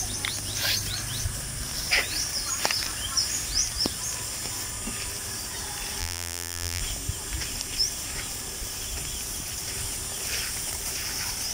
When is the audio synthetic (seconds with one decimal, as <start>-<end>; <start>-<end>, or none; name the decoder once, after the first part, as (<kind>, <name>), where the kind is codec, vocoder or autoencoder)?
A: 6.0-6.8 (vocoder, BigVGAN v2)